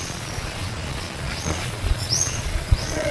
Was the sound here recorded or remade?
remade